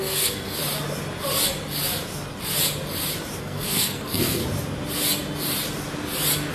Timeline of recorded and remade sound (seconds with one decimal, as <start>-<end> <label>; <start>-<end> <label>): 0.0-0.6 remade; 0.6-3.4 recorded; 3.4-4.4 remade; 4.4-6.5 recorded